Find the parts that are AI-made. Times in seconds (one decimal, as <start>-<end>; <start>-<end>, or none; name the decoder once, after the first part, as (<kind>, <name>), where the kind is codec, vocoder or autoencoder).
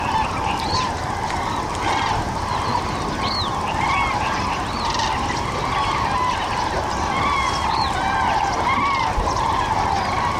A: none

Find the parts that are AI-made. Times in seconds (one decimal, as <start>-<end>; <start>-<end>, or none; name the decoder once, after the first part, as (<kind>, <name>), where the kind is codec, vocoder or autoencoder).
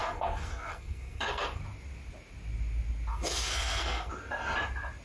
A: 0.0-1.6 (codec, SNAC); 3.1-4.1